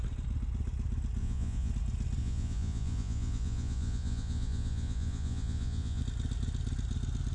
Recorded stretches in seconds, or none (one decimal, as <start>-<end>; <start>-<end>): 0.0-1.2; 1.7-2.2; 6.0-7.3